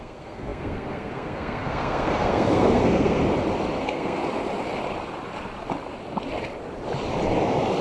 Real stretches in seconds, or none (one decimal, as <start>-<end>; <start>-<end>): 3.2-3.8; 4.2-7.8